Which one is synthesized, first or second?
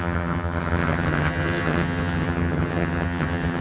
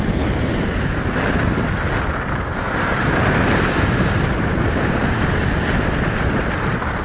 first